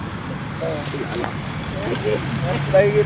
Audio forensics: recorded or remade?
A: recorded